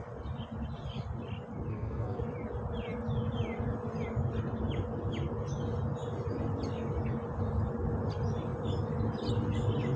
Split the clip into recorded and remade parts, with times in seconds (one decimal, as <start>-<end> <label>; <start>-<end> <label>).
0.0-1.7 recorded; 1.7-2.2 remade; 2.2-10.0 recorded